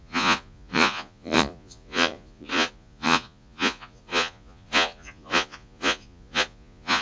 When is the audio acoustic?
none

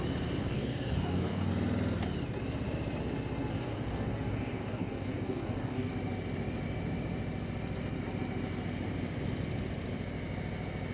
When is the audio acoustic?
0.0-0.4; 1.5-3.5; 5.9-10.9

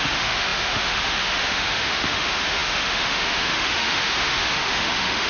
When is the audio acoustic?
none

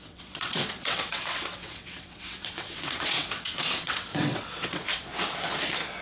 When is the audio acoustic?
5.1-6.0

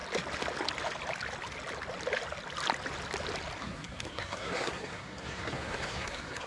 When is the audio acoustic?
0.0-3.6

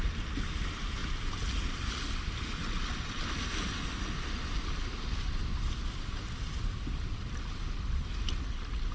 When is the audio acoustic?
0.0-8.9

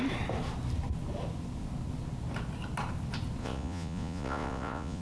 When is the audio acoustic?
0.0-3.4